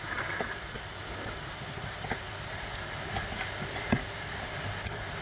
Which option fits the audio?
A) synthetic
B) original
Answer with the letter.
B